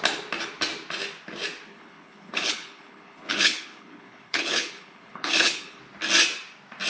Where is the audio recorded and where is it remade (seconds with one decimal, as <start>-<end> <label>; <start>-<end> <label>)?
0.0-1.7 recorded; 1.7-5.8 remade; 5.8-6.9 recorded